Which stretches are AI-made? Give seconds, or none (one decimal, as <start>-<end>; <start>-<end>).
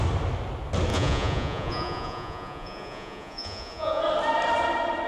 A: 0.9-4.0